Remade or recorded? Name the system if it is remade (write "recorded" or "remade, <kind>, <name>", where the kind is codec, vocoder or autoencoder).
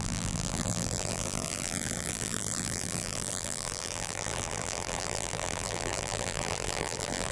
remade, vocoder, BigVGAN v2